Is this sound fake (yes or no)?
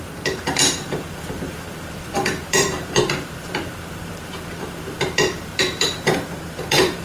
yes